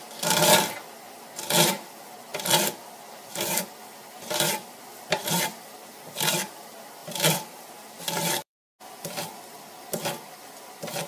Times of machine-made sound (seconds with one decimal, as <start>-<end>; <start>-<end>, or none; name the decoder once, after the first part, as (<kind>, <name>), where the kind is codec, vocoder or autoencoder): 7.0-8.8 (vocoder, BigVGAN v2)